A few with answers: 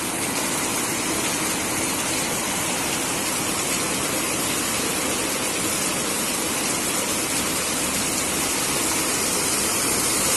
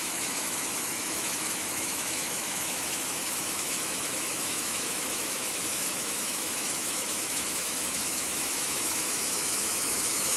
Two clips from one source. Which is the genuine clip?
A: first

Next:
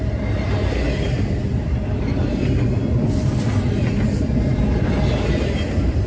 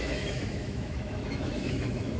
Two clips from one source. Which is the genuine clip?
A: first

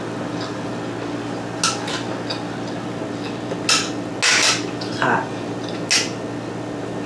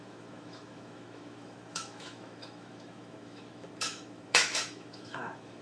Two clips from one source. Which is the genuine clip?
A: first